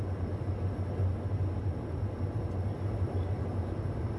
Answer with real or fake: real